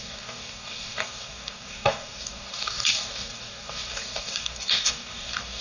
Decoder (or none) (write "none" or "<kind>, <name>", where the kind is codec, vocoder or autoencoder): codec, DAC